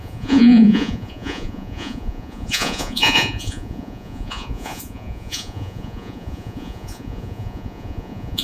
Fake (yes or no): yes